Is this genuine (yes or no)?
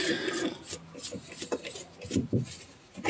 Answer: yes